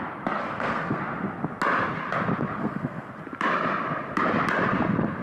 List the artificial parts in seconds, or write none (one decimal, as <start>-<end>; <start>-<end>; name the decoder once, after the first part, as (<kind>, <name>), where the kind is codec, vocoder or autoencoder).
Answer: 0.4-1.0 (codec, SNAC); 2.6-3.1

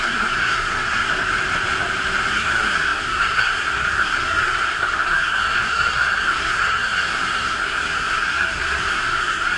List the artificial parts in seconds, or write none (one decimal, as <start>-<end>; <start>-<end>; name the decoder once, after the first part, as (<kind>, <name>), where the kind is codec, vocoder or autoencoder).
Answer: 0.0-1.1 (codec, SNAC); 2.3-9.6

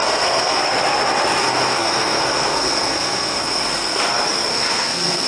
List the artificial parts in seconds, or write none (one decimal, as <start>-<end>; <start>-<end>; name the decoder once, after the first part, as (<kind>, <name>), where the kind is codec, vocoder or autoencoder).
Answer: 0.0-0.6 (codec, SNAC); 1.4-4.0; 4.5-5.3

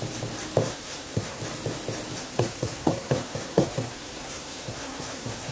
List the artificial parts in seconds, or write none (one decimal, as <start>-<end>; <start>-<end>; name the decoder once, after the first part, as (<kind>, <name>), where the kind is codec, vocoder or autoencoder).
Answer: 0.7-1.4 (codec, SNAC); 2.2-5.5

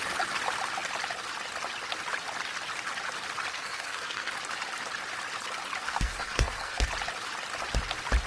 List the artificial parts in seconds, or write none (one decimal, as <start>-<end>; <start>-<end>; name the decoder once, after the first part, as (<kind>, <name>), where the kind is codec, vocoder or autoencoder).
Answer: 3.5-4.3 (codec, SNAC); 5.8-6.9

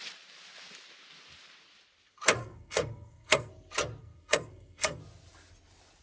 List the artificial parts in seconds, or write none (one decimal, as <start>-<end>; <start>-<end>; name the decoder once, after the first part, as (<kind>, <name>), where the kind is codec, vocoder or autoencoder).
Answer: 2.4-3.5 (codec, SNAC); 4.0-5.0

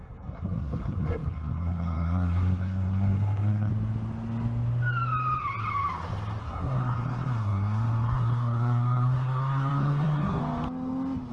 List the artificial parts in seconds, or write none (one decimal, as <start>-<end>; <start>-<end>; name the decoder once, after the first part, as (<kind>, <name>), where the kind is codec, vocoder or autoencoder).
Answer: 0.0-3.7 (codec, SNAC); 6.4-10.4